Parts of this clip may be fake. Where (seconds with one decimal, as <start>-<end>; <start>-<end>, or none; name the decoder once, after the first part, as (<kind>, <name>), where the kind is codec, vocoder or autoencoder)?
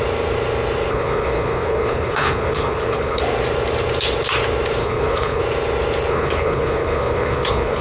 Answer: 0.9-3.2 (codec, HILCodec); 4.8-5.4; 6.1-7.8